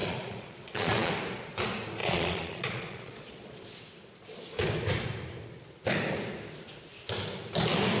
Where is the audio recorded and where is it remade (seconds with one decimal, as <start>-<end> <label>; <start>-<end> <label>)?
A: 0.0-1.1 remade; 1.1-2.0 recorded; 2.0-3.6 remade; 3.6-8.0 recorded